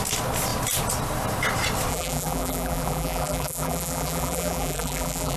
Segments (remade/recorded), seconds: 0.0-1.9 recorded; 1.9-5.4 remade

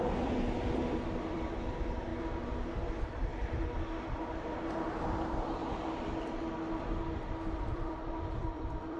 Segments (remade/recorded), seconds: 0.0-2.1 remade; 2.1-2.9 recorded; 2.9-3.3 remade; 3.3-4.1 recorded; 4.1-5.6 remade; 5.6-7.6 recorded; 7.6-9.0 remade

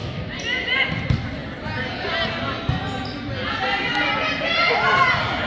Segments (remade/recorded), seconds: 0.0-5.5 recorded

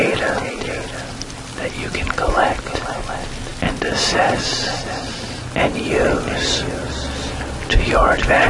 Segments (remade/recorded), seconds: 0.0-8.5 recorded